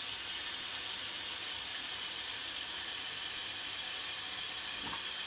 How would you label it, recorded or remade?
recorded